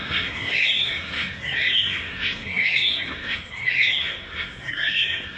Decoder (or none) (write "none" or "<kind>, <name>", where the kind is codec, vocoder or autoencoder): codec, SNAC